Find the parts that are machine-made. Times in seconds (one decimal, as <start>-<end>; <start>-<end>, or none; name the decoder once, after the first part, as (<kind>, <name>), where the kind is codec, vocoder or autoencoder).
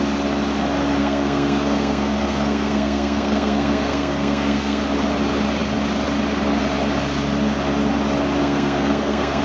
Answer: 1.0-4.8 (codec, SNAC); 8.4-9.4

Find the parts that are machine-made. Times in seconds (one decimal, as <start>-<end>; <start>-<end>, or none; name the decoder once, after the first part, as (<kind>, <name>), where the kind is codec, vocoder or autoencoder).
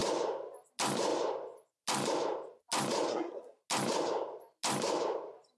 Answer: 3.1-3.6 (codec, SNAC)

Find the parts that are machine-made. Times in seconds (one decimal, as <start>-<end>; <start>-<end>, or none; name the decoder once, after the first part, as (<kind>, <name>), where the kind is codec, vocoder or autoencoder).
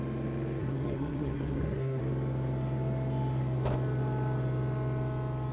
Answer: 0.6-2.0 (codec, SNAC)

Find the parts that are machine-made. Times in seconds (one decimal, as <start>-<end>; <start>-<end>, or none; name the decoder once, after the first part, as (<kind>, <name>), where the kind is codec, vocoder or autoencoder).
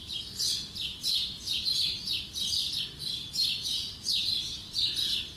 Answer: none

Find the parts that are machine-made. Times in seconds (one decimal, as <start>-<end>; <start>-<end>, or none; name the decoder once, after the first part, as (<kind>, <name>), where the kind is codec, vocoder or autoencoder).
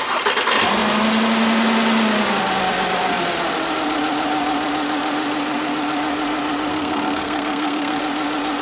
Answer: 6.7-8.0 (codec, SNAC)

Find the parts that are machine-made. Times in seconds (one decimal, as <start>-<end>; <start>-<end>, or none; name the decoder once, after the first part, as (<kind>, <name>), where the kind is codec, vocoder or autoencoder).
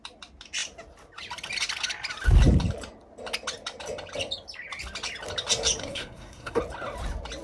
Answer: 5.8-6.6 (codec, SNAC)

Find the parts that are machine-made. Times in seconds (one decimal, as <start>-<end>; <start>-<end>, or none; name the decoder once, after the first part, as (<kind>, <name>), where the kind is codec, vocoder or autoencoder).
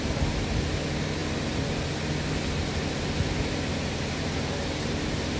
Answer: none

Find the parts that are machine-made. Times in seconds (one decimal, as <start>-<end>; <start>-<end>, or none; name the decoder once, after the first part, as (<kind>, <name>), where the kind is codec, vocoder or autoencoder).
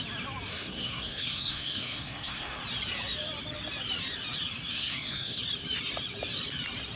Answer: 0.5-2.6 (codec, SNAC); 4.7-5.4